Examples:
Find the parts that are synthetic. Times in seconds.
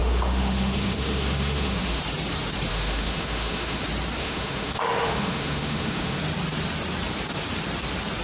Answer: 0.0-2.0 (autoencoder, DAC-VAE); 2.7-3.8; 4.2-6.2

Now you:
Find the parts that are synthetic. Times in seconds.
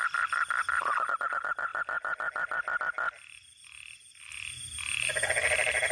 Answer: none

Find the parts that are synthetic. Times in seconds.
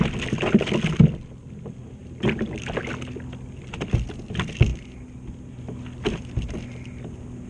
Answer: none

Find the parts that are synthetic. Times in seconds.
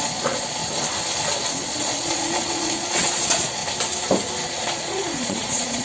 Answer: 0.0-0.6 (vocoder, Vocos); 1.5-3.6; 4.5-5.8